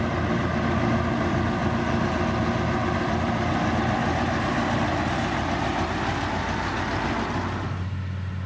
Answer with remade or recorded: recorded